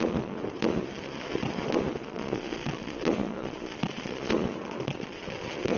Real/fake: fake